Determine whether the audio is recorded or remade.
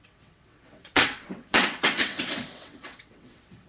remade